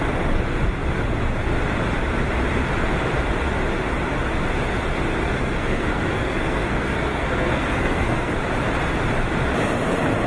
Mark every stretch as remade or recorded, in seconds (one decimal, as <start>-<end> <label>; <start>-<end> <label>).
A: 0.0-5.2 recorded; 5.2-8.4 remade; 8.4-10.3 recorded